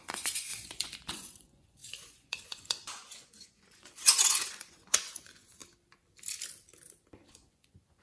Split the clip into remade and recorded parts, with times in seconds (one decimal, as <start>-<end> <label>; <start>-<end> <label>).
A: 0.0-5.6 remade; 5.6-7.3 recorded; 7.3-8.0 remade